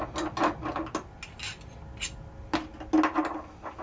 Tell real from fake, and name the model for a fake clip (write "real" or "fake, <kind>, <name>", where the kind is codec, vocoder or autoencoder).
real